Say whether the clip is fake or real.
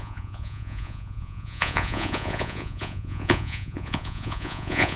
fake